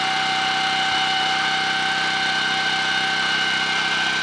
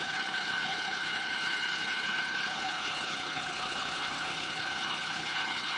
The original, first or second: first